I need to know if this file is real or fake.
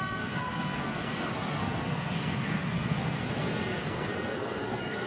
fake